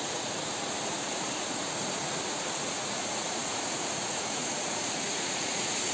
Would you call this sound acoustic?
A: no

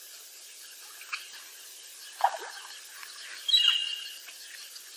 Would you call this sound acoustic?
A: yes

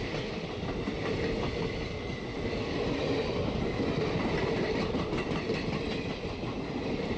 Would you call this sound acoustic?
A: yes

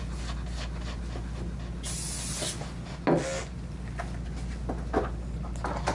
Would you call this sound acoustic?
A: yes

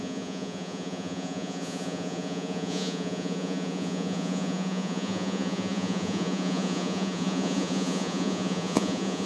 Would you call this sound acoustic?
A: no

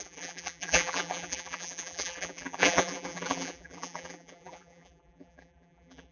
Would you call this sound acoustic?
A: no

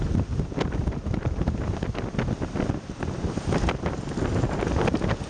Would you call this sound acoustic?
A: yes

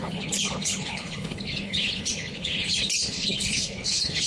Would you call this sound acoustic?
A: no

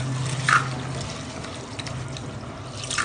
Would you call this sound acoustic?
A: yes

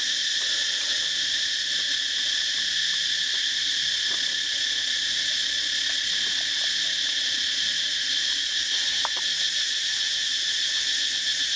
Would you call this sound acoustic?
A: yes